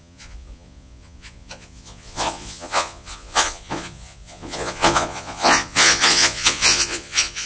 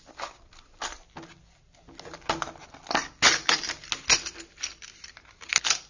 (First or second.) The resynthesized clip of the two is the first